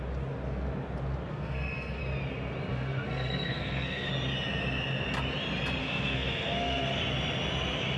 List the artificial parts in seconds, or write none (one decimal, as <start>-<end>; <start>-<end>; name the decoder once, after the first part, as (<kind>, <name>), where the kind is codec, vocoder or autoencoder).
1.3-2.0 (codec, SNAC); 2.7-4.1; 5.8-7.0